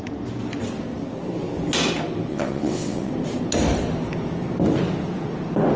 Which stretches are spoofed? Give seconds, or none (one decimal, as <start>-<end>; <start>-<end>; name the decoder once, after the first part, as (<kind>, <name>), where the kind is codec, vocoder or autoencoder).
2.3-3.1 (vocoder, WaveNeXt)